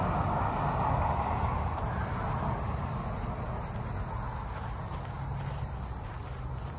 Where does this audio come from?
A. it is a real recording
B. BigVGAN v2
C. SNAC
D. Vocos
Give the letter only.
A